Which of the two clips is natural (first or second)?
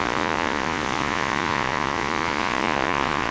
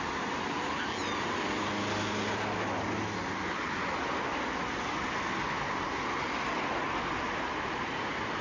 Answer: second